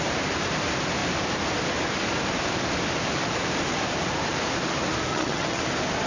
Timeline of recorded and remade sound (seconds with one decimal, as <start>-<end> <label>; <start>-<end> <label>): 0.0-5.1 recorded; 5.1-5.6 remade; 5.6-6.1 recorded